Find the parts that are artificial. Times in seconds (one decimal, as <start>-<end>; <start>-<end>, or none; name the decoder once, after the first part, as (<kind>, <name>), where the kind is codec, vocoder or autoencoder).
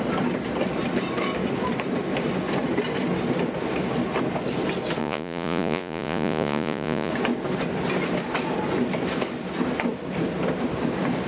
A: 5.0-7.1 (vocoder, Vocos)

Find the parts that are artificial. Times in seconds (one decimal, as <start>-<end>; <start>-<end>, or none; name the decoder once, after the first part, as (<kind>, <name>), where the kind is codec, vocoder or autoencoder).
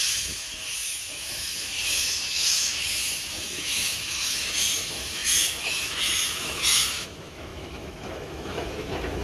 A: 0.0-9.2 (autoencoder, DAC-VAE)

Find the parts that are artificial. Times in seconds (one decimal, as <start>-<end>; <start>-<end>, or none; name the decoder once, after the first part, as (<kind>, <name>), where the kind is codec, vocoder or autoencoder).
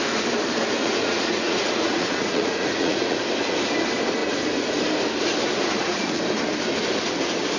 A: 0.8-3.2 (vocoder, Vocos); 5.7-6.2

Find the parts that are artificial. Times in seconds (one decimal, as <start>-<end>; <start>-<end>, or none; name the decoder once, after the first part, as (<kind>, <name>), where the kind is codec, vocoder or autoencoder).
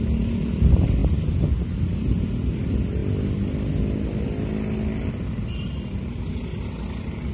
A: none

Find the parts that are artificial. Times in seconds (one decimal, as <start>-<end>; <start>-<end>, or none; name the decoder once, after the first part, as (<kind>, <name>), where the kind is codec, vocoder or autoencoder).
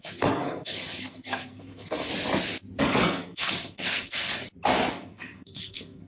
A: 0.0-2.1 (codec, SNAC); 2.8-4.4; 4.9-6.1